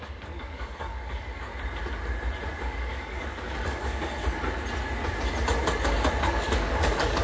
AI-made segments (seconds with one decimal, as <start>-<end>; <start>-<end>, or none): 0.0-1.5; 2.6-4.2; 6.2-7.2